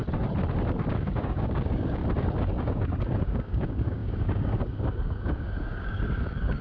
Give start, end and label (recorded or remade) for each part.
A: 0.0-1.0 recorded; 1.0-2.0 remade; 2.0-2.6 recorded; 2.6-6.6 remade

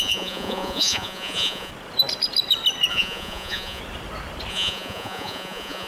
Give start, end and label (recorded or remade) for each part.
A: 0.0-1.7 remade; 1.7-2.9 recorded; 2.9-3.8 remade; 3.8-4.5 recorded; 4.5-5.9 remade

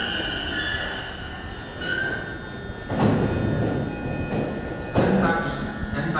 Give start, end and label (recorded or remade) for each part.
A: 0.0-6.2 recorded

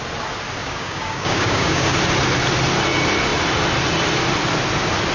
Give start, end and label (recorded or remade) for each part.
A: 0.0-0.6 recorded; 0.6-2.0 remade; 2.0-5.1 recorded

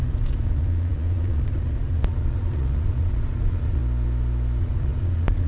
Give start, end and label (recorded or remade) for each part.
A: 0.0-3.8 remade; 3.8-4.6 recorded; 4.6-5.5 remade

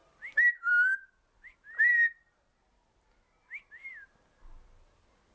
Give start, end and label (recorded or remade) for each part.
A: 0.0-5.3 recorded